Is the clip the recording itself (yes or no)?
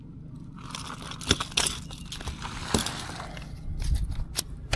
yes